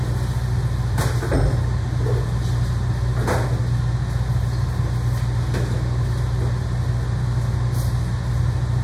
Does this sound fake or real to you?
real